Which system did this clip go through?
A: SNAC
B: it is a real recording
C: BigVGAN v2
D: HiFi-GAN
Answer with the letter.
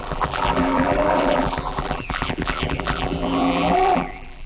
C